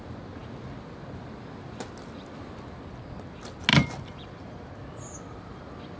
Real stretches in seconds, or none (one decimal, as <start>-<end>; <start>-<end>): 0.0-3.7; 4.7-6.0